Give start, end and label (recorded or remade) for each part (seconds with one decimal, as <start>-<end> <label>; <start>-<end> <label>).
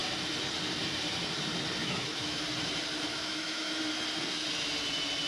0.0-1.8 recorded; 1.8-2.4 remade; 2.4-3.1 recorded; 3.1-3.8 remade; 3.8-5.3 recorded